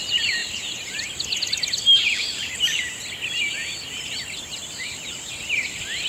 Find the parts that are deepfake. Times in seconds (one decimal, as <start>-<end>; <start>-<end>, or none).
0.4-1.1; 2.2-3.0; 4.6-5.3